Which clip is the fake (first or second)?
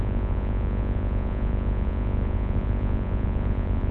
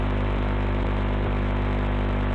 first